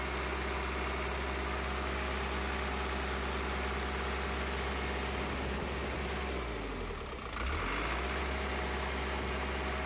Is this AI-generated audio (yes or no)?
no